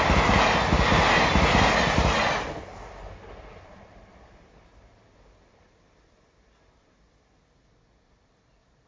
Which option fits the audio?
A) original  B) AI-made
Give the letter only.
A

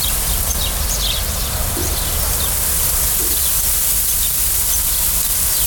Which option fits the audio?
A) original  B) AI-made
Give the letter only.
A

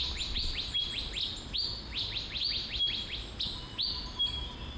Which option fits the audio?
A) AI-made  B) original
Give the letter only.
B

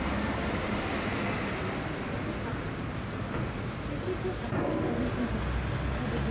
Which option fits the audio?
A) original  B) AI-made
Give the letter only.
A